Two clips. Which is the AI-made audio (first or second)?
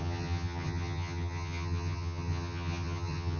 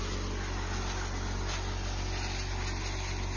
first